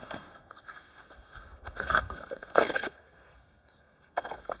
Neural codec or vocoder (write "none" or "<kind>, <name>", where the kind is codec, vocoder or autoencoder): codec, SNAC